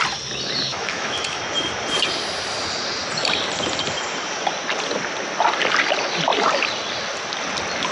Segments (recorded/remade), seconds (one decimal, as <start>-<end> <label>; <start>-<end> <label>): 0.0-0.7 recorded; 0.7-1.4 remade; 1.4-7.9 recorded